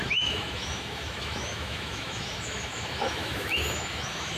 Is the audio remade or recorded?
remade